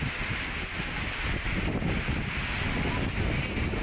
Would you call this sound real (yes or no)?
yes